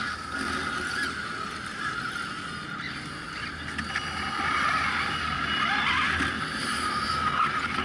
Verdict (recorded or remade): recorded